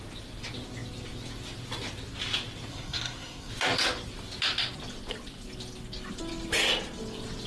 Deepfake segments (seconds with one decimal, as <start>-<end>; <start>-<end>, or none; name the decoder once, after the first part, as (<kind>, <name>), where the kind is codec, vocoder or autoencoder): 2.7-3.5 (codec, SNAC)